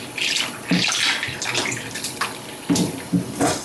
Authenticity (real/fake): real